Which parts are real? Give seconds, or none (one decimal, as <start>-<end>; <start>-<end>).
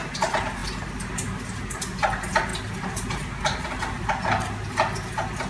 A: 0.0-5.5